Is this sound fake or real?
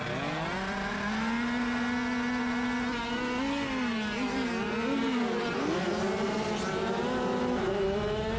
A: real